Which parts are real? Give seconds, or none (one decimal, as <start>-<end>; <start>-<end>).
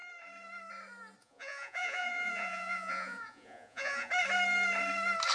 0.0-1.2; 4.1-5.3